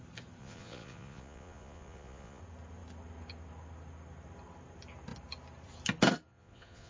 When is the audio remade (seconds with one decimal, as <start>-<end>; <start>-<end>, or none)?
0.4-2.4; 6.3-6.9